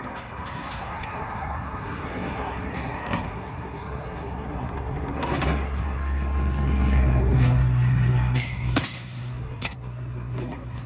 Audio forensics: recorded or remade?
remade